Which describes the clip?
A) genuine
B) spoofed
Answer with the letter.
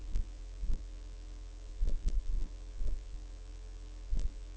B